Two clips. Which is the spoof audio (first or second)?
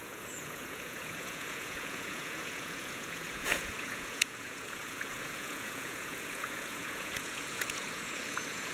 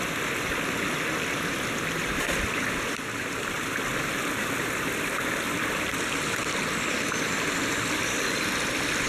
first